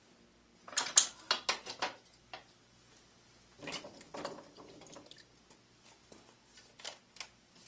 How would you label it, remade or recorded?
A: recorded